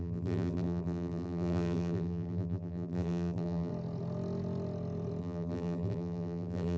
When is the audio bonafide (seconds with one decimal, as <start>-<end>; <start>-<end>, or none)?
3.7-5.2